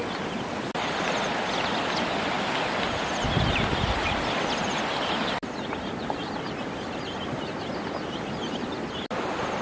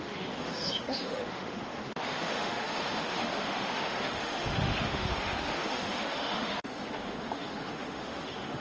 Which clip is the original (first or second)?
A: first